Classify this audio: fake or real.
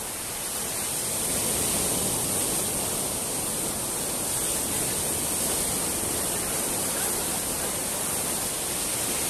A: real